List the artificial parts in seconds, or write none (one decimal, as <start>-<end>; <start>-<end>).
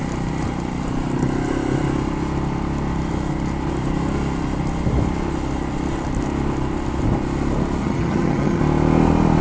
7.8-8.6